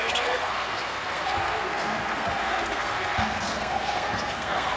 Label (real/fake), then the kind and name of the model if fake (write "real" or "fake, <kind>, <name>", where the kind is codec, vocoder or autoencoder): fake, codec, SNAC